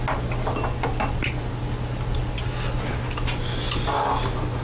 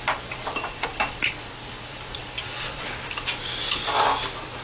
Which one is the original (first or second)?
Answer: first